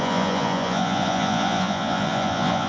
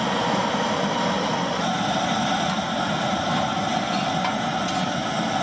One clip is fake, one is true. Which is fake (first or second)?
first